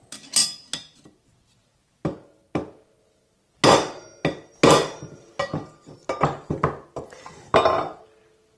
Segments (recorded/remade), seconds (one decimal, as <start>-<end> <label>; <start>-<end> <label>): 0.0-8.6 recorded